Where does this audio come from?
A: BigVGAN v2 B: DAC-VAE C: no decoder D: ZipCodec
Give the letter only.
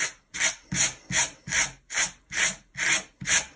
C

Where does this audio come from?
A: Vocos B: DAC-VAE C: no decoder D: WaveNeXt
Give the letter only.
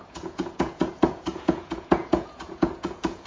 A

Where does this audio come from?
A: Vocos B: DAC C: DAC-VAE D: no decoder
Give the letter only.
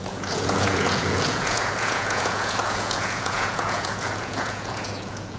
A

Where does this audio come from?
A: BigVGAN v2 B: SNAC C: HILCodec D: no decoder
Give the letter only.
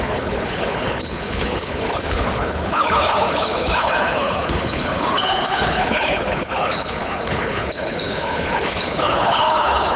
C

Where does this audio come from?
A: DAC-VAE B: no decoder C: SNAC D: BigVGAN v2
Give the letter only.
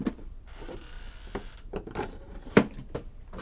D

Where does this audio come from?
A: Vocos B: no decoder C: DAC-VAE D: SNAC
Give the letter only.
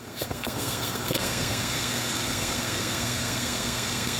D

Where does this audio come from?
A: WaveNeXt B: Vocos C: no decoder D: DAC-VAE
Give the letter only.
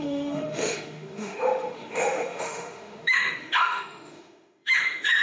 D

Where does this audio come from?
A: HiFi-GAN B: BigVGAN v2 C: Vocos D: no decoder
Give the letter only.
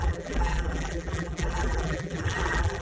B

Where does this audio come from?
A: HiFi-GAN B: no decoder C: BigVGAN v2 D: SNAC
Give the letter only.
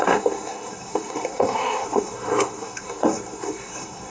D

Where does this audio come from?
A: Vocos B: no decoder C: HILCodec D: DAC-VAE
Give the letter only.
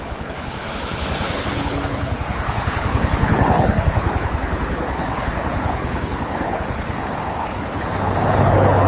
C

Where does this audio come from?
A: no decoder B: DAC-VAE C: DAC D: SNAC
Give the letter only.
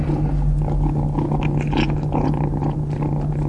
A